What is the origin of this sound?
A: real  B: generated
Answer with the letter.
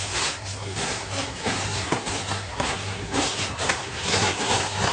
B